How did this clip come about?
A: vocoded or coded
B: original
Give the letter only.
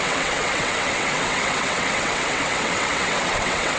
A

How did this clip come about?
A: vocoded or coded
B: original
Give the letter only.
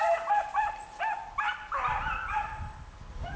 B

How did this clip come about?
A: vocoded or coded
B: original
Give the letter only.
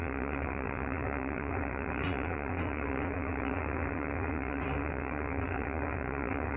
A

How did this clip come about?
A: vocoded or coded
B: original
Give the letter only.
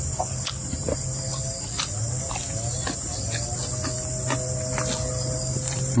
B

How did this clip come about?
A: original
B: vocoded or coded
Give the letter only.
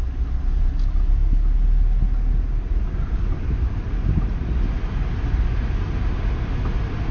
A